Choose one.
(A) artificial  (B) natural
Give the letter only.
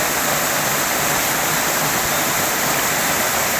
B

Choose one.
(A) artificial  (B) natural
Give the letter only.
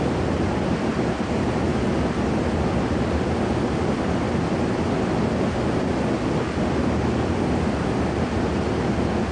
B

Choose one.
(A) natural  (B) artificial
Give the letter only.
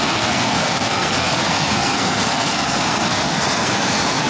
B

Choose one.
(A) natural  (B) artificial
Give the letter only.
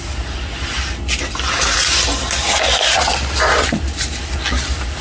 A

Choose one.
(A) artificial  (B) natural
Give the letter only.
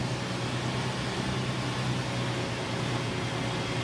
B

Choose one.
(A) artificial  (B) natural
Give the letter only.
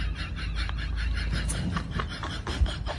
B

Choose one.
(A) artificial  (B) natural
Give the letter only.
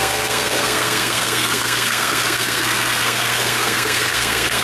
A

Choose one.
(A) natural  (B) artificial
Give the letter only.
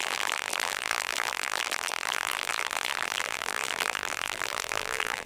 B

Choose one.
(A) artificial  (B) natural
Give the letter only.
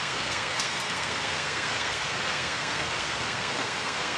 A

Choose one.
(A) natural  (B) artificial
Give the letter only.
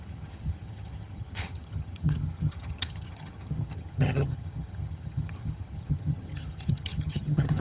B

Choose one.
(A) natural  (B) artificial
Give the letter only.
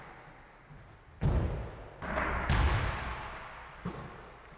A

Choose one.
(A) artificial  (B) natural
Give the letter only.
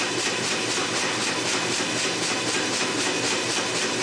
B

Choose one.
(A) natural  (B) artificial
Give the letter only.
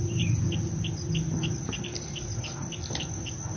A